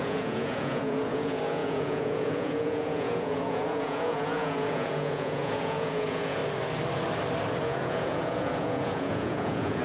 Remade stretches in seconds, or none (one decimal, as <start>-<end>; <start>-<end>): 0.0-6.4; 7.6-9.8